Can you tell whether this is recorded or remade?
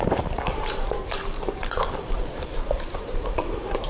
remade